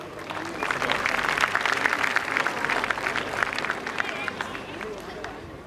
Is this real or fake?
real